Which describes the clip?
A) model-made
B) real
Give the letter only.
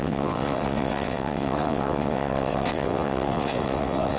A